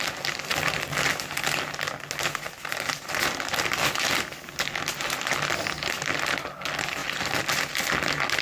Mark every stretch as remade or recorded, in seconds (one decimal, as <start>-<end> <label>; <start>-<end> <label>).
0.0-8.4 recorded